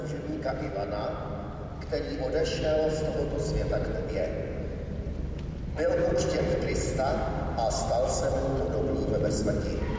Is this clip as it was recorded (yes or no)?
yes